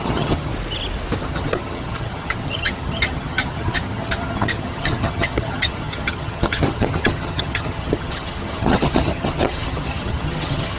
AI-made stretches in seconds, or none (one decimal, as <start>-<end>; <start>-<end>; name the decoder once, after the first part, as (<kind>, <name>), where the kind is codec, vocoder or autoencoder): 0.0-0.5 (vocoder, HiFi-GAN); 1.2-10.8